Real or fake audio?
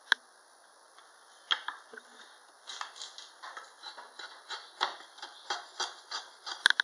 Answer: real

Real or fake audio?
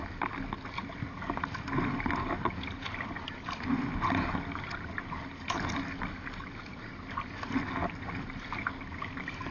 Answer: real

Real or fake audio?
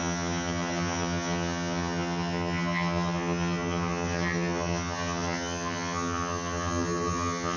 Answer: fake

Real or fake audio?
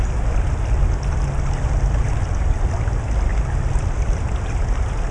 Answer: real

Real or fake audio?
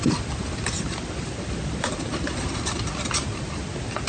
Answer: real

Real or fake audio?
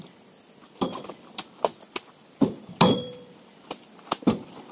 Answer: real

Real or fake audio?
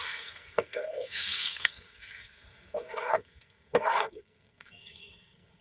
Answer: fake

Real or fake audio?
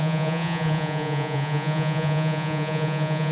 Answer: fake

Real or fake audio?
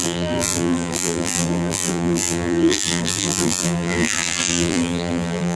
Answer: fake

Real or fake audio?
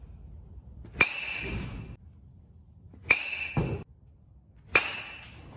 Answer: real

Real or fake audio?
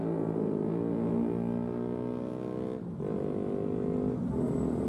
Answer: real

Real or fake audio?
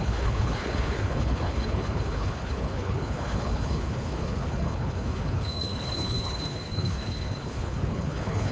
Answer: fake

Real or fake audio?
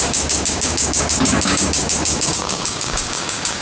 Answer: fake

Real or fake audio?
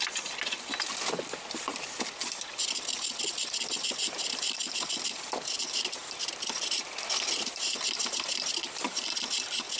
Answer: real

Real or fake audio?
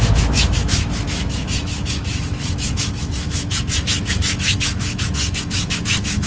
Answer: fake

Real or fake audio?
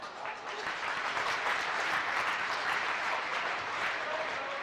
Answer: fake